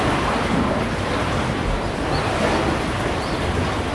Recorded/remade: recorded